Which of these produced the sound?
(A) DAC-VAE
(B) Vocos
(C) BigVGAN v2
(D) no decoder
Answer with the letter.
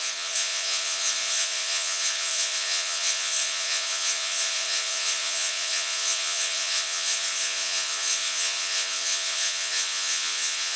B